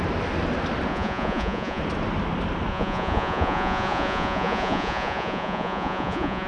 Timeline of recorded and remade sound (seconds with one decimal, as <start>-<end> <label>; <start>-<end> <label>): 0.0-0.9 recorded; 0.9-1.8 remade; 1.8-2.7 recorded; 2.7-6.5 remade